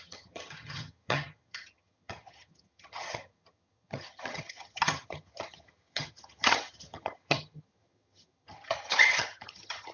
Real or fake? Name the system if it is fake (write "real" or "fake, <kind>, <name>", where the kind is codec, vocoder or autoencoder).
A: fake, vocoder, HiFi-GAN